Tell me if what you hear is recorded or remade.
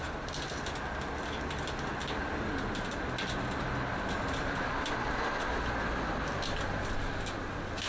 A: recorded